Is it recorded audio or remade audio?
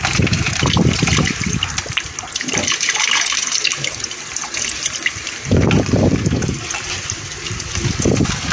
remade